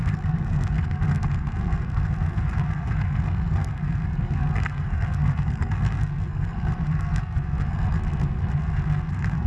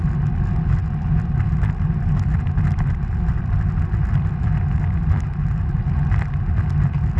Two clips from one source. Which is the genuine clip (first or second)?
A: second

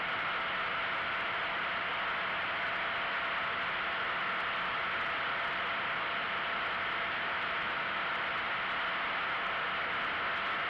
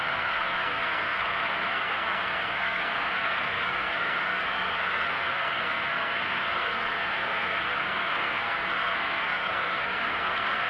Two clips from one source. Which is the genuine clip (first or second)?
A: first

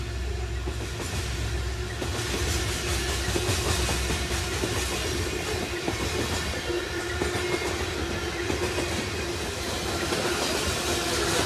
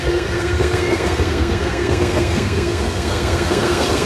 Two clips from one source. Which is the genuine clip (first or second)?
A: first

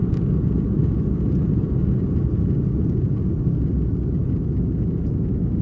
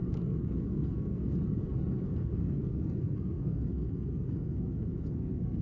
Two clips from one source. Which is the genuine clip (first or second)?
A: first